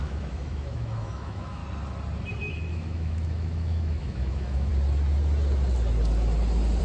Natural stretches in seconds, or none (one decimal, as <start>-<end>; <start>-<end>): 1.6-2.4; 4.7-6.8